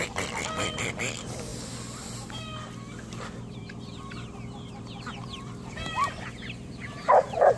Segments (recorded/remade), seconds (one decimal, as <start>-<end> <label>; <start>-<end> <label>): 0.0-1.5 remade; 1.5-3.5 recorded; 3.5-7.6 remade